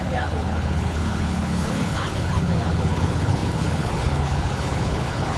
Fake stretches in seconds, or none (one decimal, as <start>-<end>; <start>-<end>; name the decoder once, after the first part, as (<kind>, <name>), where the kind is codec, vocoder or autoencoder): 0.0-5.4 (codec, HILCodec)